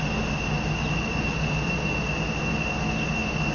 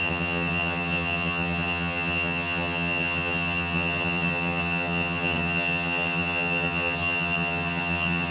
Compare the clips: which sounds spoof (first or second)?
second